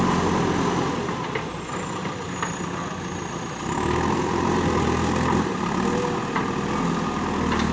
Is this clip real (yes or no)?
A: yes